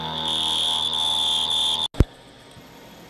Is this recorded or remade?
recorded